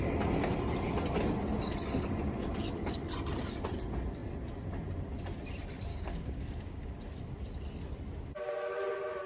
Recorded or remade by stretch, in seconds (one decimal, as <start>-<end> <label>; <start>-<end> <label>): 0.0-5.9 recorded; 5.9-6.9 remade; 6.9-9.3 recorded